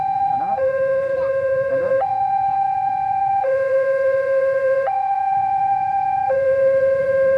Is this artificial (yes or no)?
yes